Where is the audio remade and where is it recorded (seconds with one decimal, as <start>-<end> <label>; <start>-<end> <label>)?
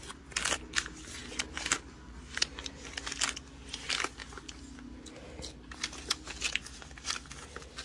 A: 0.0-7.8 recorded